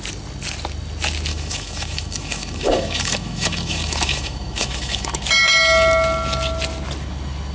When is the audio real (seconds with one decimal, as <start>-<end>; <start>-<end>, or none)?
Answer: 0.0-1.3; 5.2-7.5